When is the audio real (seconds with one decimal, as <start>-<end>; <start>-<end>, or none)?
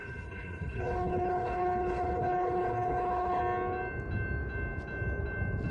3.4-5.7